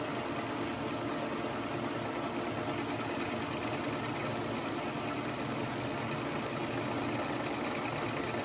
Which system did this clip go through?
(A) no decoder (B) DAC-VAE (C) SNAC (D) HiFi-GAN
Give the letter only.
A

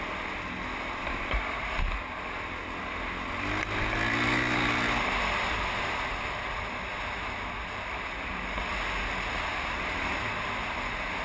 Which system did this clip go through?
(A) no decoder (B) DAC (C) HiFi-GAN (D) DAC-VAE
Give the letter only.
A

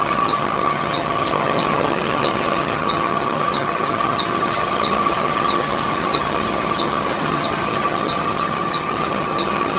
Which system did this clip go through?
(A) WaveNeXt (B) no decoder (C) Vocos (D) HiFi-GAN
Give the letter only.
D